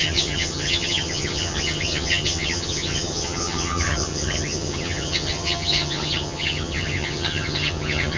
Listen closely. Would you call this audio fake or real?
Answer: fake